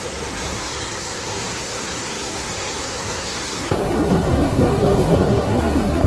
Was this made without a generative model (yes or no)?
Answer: no